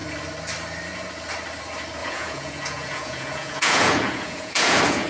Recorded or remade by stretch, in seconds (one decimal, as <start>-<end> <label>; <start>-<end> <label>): 0.0-2.0 recorded; 2.0-5.1 remade